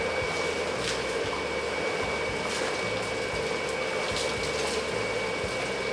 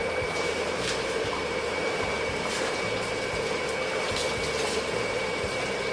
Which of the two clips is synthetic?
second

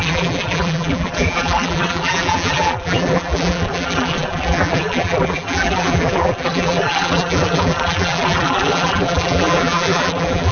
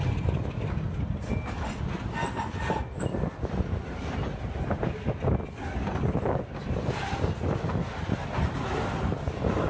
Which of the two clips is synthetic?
first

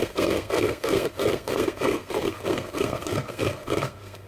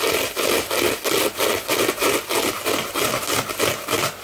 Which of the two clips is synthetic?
first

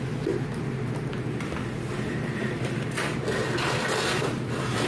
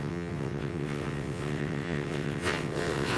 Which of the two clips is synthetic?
second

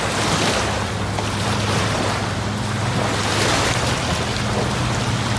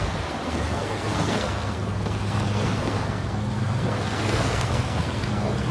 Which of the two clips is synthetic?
second